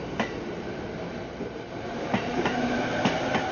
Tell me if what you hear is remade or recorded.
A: remade